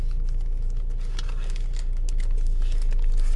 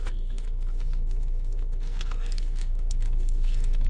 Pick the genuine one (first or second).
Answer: first